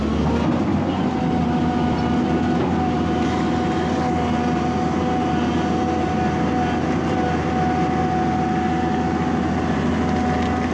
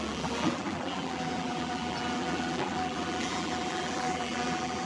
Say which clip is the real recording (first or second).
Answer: first